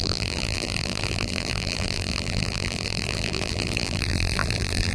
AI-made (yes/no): yes